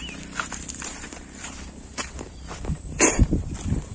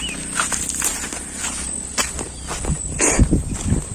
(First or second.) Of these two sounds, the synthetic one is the first